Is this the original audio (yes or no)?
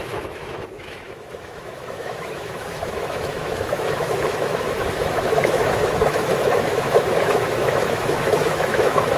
no